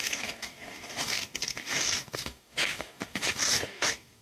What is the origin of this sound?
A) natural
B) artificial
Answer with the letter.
B